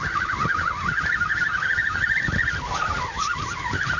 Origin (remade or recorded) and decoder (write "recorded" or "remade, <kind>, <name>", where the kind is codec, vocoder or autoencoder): recorded